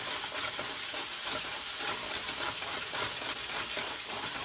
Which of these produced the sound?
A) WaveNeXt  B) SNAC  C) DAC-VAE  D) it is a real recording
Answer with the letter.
D